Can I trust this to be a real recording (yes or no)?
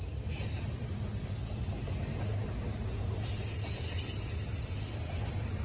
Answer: yes